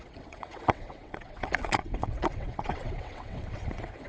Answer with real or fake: fake